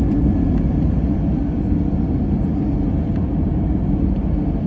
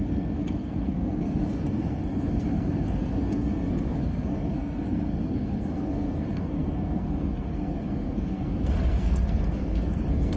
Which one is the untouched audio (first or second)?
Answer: first